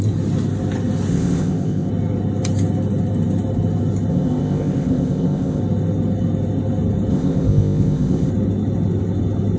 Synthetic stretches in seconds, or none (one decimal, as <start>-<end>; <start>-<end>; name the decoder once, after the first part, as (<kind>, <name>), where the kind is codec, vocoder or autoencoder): 1.1-1.9 (codec, ZipCodec); 4.1-5.6; 7.1-8.3